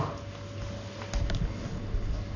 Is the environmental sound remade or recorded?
recorded